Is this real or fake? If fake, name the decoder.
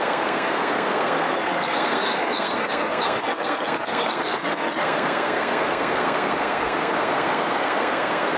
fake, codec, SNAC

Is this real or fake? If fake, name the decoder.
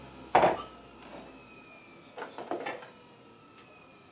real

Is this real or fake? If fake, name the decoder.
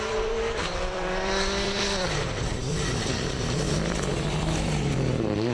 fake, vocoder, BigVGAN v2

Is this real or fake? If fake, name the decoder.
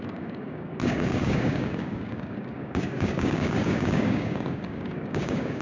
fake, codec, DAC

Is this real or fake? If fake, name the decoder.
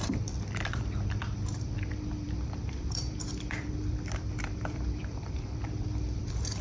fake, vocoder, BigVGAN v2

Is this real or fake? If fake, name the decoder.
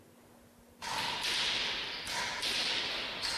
real